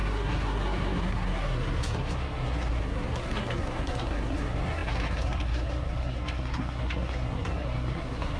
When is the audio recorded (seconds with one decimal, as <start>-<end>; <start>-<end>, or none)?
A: none